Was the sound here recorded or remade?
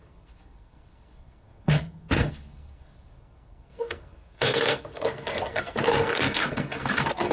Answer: remade